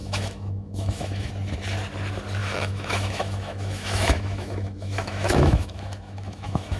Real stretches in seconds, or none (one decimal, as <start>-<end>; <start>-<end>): 1.3-2.4